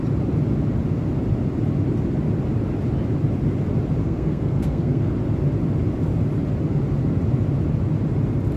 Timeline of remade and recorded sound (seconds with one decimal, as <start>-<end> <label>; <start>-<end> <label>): 0.0-4.0 recorded; 4.0-5.1 remade; 5.1-8.6 recorded